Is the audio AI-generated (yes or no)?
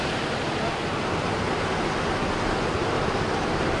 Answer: no